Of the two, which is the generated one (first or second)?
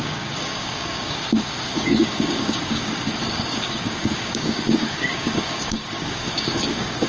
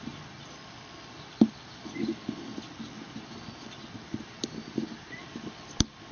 first